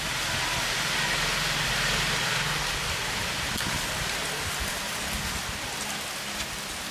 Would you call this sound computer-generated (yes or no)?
no